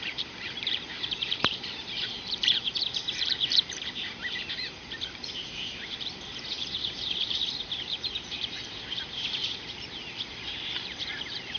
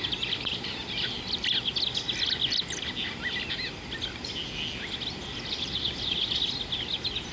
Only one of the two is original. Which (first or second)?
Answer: second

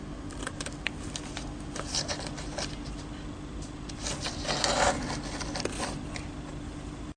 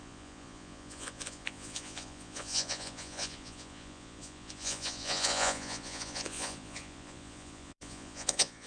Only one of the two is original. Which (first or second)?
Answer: first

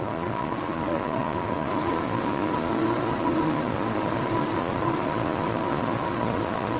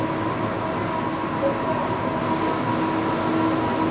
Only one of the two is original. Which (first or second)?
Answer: second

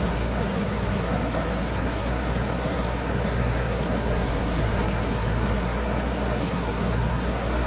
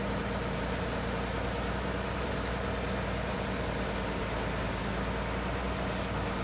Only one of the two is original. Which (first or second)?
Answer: second